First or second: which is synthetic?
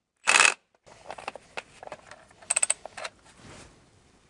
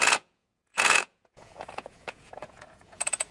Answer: second